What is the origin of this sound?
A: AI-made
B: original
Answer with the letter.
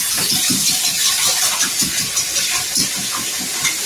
B